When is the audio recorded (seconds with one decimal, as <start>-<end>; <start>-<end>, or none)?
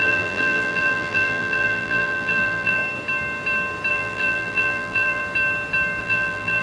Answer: 2.8-3.9; 5.2-6.0